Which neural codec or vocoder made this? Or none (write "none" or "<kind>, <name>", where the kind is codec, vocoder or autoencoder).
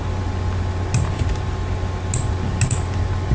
none